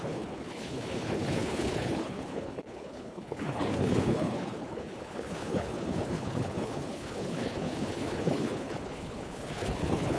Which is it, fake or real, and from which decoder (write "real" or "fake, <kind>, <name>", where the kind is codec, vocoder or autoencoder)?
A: fake, codec, HILCodec